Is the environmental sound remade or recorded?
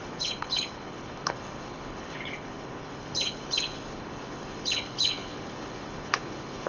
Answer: remade